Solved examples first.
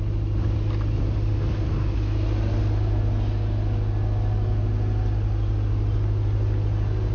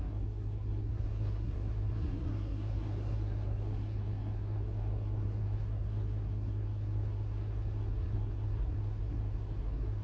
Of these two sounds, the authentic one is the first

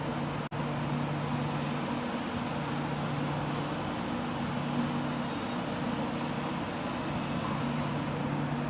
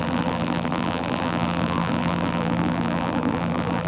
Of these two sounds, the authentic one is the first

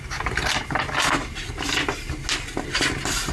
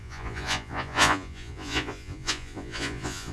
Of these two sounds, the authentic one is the first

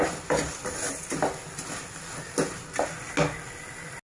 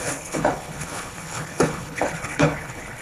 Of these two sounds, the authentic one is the first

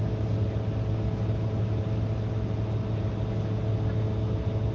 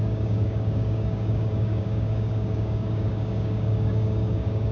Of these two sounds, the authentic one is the first